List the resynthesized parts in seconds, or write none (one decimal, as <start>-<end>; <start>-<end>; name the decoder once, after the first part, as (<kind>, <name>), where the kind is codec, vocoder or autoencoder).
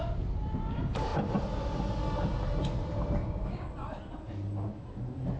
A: 3.2-3.7 (codec, DAC)